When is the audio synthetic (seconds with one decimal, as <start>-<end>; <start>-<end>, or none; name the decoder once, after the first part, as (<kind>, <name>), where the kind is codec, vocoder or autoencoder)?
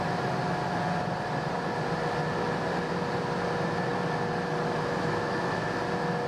none